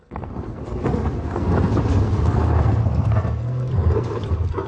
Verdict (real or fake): fake